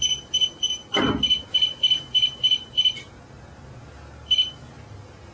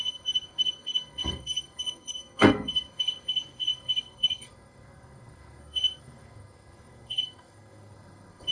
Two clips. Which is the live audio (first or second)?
first